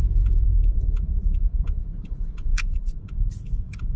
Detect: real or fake fake